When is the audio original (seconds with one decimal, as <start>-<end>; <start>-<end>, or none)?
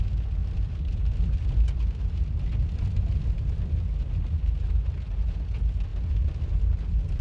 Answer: 0.0-7.2